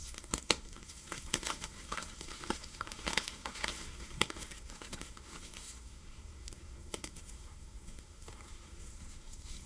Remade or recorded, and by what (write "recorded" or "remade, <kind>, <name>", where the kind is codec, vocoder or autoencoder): remade, codec, SNAC